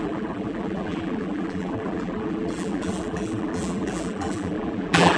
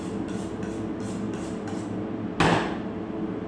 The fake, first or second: first